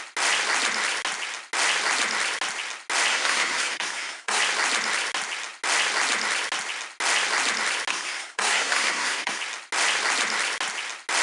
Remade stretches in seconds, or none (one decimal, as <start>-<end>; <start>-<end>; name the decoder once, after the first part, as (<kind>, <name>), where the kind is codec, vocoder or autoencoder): 3.1-4.4 (codec, SNAC); 7.9-9.4